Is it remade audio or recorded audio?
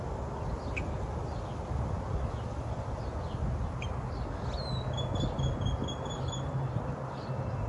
recorded